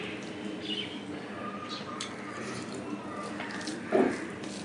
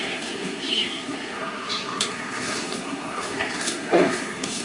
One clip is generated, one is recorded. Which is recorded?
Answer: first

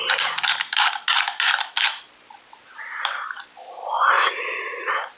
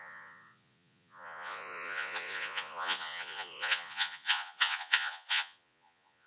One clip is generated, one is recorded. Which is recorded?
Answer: first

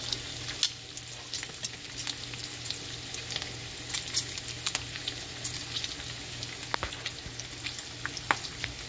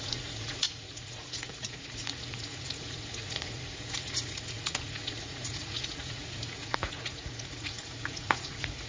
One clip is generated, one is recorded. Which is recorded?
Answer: first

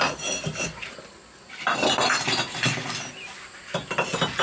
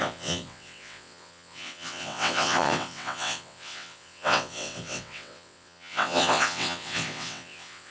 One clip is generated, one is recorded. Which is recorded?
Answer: first